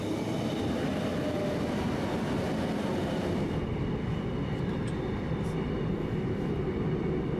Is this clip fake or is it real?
real